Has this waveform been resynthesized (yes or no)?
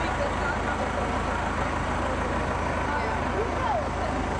no